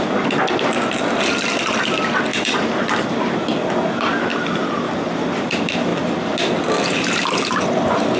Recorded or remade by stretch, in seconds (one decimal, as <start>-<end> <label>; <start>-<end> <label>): 0.0-2.3 recorded; 2.3-2.9 remade; 2.9-8.2 recorded

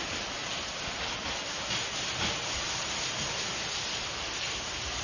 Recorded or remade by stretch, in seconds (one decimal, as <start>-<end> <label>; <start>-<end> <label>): 0.0-5.0 recorded

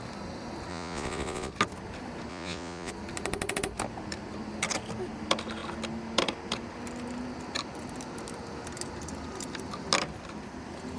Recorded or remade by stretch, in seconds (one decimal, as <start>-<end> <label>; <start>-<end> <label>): 0.0-0.7 recorded; 0.7-1.5 remade; 1.5-2.3 recorded; 2.3-2.9 remade; 2.9-11.0 recorded

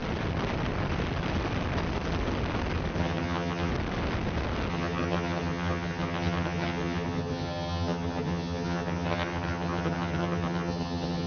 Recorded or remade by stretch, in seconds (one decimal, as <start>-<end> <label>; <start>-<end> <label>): 0.0-3.0 recorded; 3.0-3.7 remade; 3.7-4.7 recorded; 4.7-11.3 remade

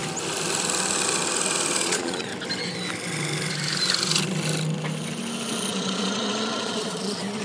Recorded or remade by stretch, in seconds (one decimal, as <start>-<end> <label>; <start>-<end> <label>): 0.0-1.8 recorded; 1.8-2.3 remade; 2.3-5.7 recorded; 5.7-7.4 remade

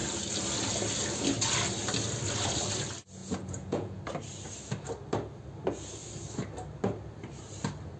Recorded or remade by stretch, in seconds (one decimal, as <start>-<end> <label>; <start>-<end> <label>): 0.0-3.2 recorded; 3.2-4.0 remade; 4.0-8.0 recorded

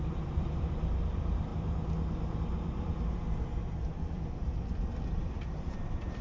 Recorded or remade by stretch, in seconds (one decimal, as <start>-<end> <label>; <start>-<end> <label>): 0.0-1.5 remade; 1.5-5.2 recorded; 5.2-6.2 remade

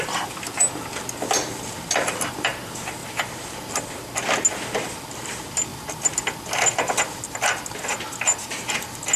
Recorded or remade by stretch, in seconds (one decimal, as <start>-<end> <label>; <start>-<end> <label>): 0.0-9.2 recorded